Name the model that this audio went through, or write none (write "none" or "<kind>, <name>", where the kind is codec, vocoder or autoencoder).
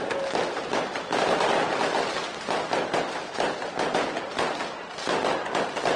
none